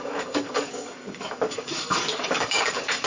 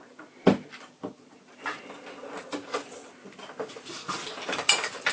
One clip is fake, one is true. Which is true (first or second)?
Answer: second